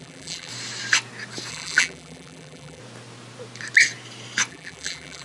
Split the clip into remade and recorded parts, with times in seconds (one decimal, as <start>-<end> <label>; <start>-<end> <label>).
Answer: 0.0-0.5 remade; 0.5-1.5 recorded; 1.5-2.8 remade; 2.8-4.5 recorded; 4.5-5.2 remade